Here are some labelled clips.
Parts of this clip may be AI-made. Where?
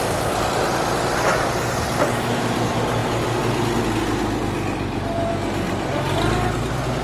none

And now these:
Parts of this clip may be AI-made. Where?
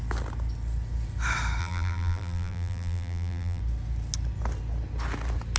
1.6-3.6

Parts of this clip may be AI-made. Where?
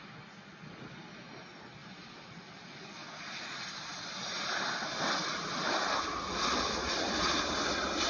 1.8-2.7; 5.2-6.2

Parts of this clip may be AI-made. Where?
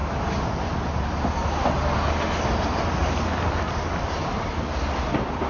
none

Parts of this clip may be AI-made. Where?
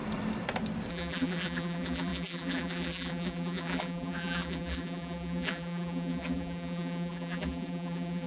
0.9-8.3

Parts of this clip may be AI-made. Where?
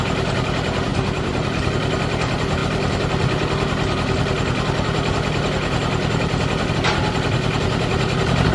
0.9-1.7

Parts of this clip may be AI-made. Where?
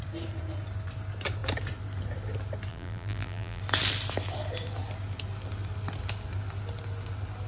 2.7-3.6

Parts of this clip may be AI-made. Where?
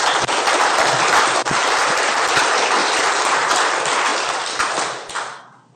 1.4-2.3; 2.8-3.5